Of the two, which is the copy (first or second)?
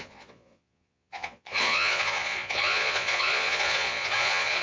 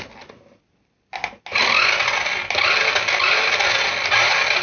first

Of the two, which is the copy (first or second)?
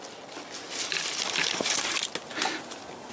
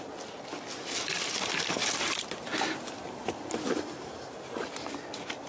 second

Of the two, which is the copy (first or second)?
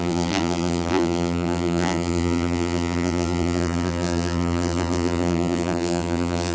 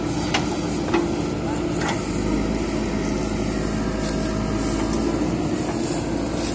first